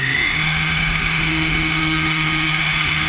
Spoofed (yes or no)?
yes